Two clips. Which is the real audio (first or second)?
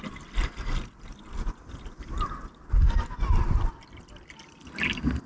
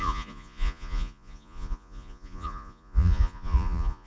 first